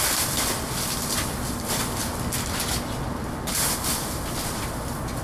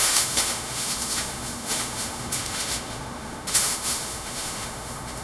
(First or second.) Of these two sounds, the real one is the first